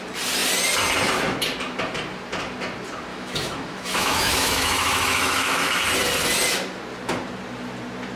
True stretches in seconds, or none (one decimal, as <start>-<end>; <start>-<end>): 0.0-3.1; 5.8-8.2